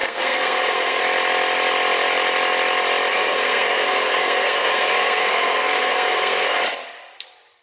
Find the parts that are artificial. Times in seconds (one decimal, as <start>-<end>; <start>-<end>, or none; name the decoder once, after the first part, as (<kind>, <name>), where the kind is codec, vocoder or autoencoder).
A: 0.0-1.0 (codec, SNAC); 3.1-6.6